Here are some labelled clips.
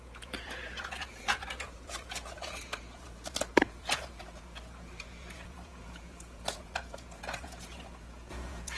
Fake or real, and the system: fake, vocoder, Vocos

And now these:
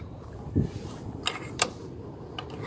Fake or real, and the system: real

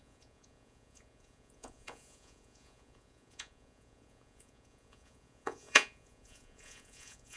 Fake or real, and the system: fake, vocoder, Vocos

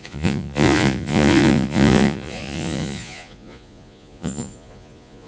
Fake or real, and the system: fake, vocoder, Vocos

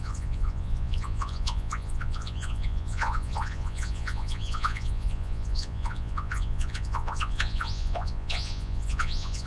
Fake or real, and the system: fake, vocoder, Vocos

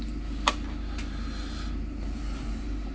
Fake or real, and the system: real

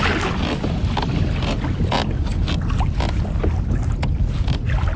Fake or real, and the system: real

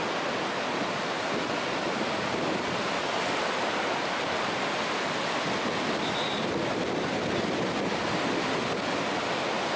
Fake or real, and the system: real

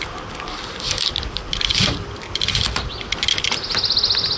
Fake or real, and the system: real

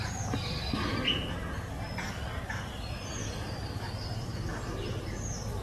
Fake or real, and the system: real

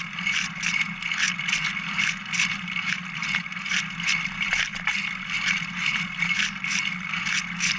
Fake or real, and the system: real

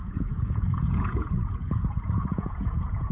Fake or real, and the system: fake, vocoder, Vocos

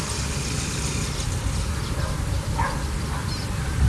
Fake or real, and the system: real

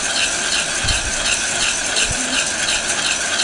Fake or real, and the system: real